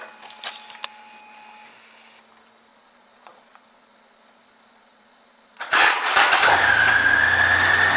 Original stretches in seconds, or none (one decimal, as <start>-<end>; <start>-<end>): 0.0-2.7; 6.4-8.0